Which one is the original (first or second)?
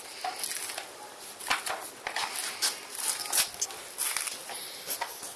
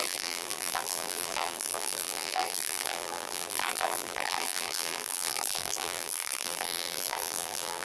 first